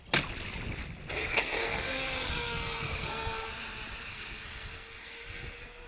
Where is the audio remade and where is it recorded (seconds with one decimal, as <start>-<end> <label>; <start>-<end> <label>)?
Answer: 0.0-1.2 recorded; 1.2-3.5 remade; 3.5-4.1 recorded; 4.1-5.9 remade